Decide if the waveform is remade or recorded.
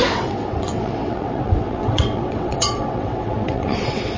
remade